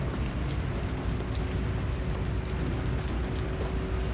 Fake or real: real